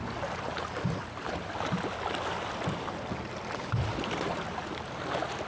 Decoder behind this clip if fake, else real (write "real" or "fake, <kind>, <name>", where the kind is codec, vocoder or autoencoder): real